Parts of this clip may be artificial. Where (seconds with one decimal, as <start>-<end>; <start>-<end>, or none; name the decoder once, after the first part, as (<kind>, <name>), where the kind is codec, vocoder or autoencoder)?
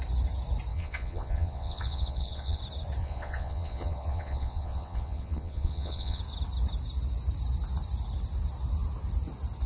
0.7-2.6 (vocoder, Vocos); 3.0-6.2